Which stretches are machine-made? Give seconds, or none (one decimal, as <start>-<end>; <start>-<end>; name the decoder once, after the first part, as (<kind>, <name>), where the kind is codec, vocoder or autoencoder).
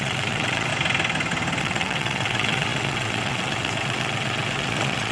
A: 0.0-0.7 (vocoder, WaveNeXt); 1.6-5.1